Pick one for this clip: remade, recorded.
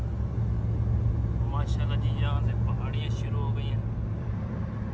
recorded